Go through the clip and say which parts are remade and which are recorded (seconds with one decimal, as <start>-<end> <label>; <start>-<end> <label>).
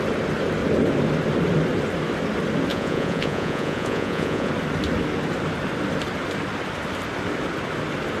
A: 0.0-2.7 recorded; 2.7-4.5 remade; 4.5-8.2 recorded